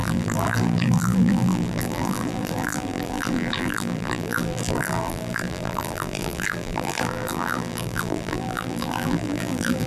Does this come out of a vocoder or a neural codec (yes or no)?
yes